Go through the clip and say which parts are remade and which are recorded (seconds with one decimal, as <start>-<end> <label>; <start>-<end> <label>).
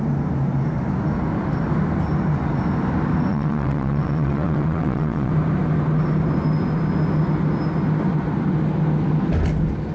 0.0-3.3 recorded; 3.3-5.3 remade; 5.3-9.9 recorded